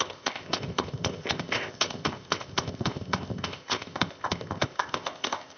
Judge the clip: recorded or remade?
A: remade